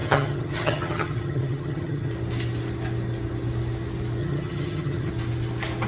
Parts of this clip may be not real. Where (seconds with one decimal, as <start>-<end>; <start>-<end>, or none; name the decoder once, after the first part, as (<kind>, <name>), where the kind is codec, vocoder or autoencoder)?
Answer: 0.0-2.1 (vocoder, HiFi-GAN); 4.2-5.1